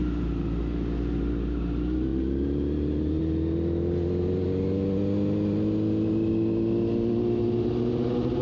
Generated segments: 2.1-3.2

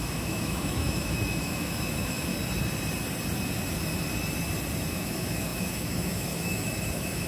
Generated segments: 0.0-2.3; 4.9-7.3

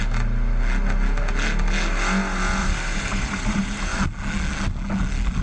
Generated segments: 2.6-4.0

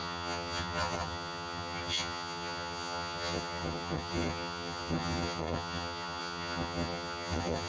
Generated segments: 0.0-7.7

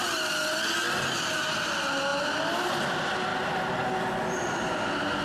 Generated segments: none

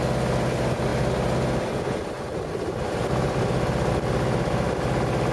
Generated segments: none